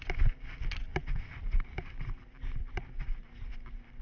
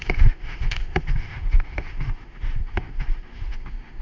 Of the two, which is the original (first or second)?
first